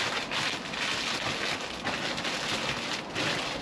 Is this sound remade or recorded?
recorded